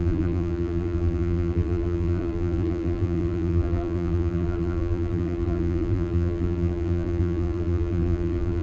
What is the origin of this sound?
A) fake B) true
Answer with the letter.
A